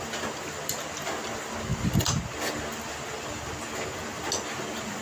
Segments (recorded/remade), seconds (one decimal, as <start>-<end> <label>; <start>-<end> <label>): 0.0-5.0 recorded